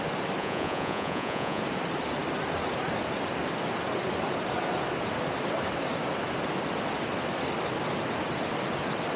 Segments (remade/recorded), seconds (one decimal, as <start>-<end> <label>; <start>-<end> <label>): 0.0-0.4 recorded; 0.4-1.6 remade; 1.6-9.2 recorded